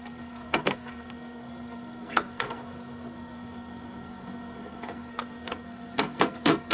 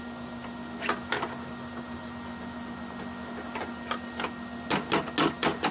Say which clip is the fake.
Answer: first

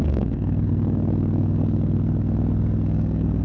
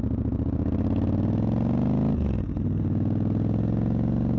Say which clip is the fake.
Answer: first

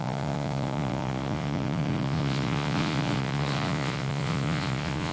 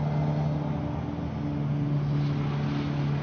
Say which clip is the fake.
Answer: first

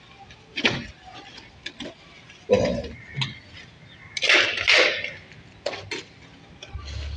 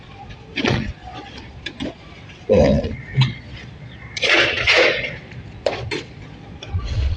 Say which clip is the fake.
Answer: second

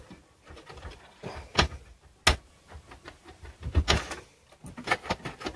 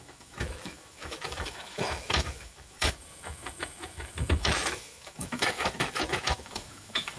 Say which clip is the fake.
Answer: second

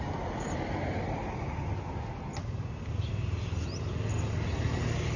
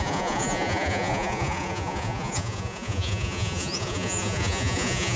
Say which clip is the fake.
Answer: second